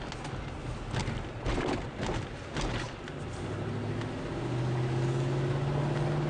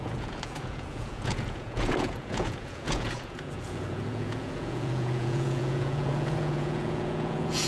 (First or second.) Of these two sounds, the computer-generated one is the second